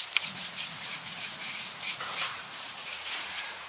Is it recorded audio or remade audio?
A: remade